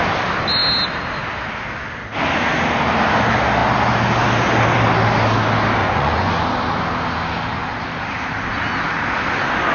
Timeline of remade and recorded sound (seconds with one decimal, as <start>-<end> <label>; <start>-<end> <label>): 0.0-5.8 recorded; 5.8-6.4 remade; 6.4-9.7 recorded